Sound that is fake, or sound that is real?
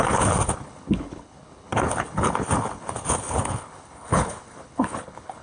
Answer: fake